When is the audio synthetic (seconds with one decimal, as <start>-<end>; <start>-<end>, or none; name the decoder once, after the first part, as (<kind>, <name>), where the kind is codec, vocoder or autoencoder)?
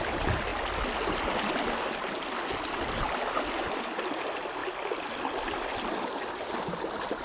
none